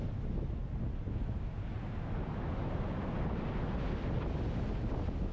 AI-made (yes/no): no